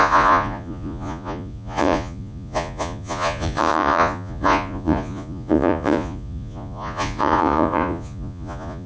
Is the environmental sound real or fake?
fake